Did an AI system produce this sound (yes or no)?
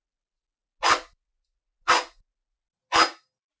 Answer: no